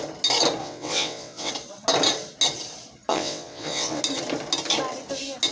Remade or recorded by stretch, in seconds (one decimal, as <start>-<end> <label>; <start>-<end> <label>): 0.0-0.6 recorded; 0.6-1.5 remade; 1.5-3.1 recorded; 3.1-4.0 remade; 4.0-5.5 recorded